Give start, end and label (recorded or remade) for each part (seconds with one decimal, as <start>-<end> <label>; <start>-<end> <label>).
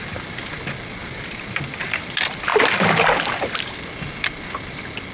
0.0-5.1 recorded